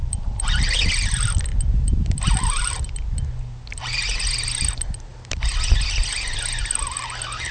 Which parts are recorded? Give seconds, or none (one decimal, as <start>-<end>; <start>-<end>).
0.9-1.5; 2.8-7.5